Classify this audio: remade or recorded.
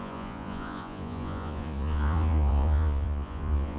remade